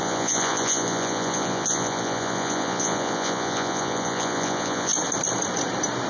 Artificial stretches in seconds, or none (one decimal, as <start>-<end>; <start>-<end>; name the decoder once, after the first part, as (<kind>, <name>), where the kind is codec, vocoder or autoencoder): 0.0-4.9 (vocoder, Vocos)